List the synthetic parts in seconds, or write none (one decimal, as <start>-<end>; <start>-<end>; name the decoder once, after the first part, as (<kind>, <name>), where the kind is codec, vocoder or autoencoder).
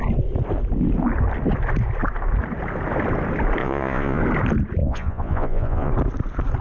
3.6-4.2 (vocoder, Vocos); 4.8-5.9